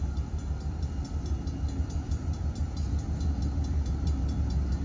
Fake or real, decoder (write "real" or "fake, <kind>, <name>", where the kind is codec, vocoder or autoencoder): real